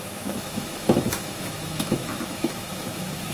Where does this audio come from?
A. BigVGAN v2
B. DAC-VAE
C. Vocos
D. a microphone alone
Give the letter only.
B